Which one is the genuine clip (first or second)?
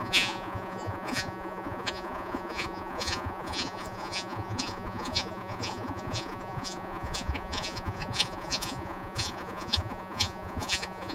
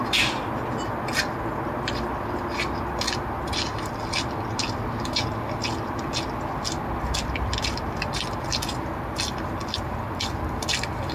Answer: second